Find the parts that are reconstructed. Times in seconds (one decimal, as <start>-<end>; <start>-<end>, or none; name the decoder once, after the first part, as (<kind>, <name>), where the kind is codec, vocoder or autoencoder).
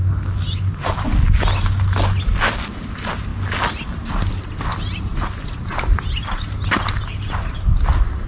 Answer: none